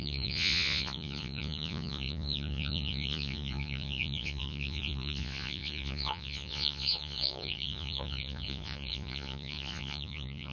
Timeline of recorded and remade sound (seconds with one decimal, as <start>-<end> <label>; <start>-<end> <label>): 0.0-10.5 remade